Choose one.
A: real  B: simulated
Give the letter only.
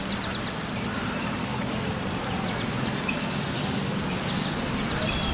A